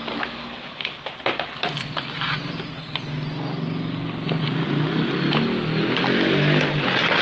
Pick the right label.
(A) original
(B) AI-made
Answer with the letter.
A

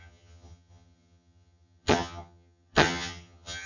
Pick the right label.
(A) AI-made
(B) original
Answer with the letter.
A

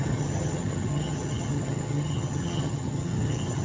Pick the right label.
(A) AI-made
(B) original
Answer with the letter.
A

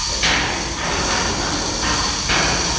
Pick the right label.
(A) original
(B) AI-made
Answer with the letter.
A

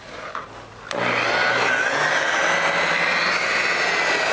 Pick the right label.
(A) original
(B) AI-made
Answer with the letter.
A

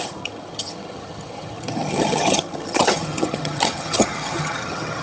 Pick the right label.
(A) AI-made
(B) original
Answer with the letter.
A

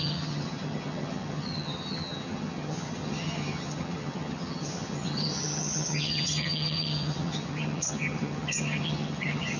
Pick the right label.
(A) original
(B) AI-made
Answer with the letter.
B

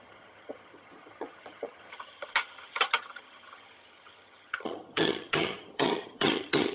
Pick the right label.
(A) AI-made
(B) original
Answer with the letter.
A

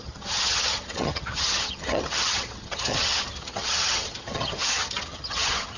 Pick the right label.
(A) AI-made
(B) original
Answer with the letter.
A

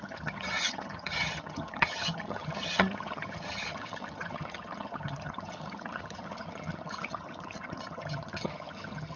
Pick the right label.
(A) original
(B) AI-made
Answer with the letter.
B